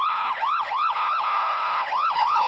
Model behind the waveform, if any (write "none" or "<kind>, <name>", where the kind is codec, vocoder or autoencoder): codec, HILCodec